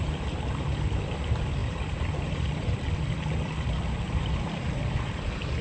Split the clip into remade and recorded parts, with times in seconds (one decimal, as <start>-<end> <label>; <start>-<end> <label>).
0.0-5.6 recorded